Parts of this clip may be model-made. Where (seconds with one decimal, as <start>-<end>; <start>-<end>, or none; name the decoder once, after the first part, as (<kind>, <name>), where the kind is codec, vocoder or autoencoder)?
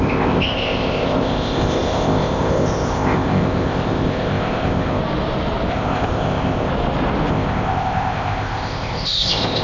0.0-5.0 (codec, ZipCodec); 5.7-6.7; 7.3-9.6